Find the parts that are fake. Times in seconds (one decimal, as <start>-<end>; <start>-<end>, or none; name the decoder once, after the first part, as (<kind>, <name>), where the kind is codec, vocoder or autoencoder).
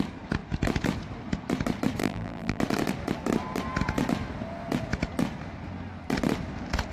2.0-2.6 (vocoder, BigVGAN v2)